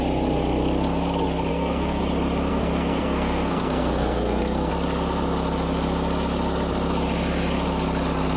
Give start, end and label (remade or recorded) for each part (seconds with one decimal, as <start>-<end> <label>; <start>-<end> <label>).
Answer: 0.0-1.5 recorded; 1.5-2.0 remade; 2.0-2.5 recorded; 2.5-4.7 remade; 4.7-8.4 recorded

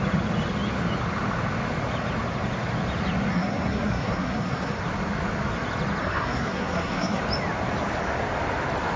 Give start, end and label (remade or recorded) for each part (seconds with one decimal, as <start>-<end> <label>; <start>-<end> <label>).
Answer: 0.0-3.3 recorded; 3.3-4.8 remade; 4.8-6.0 recorded; 6.0-7.2 remade; 7.2-9.0 recorded

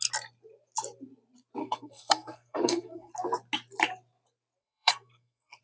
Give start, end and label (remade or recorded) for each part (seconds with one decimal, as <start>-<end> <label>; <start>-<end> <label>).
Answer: 0.0-1.6 recorded; 1.6-3.1 remade; 3.1-4.6 recorded; 4.6-5.6 remade

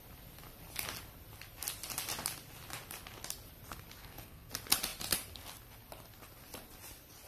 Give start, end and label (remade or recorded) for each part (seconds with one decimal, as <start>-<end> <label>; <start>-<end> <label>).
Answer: 0.0-4.0 recorded; 4.0-4.5 remade; 4.5-7.3 recorded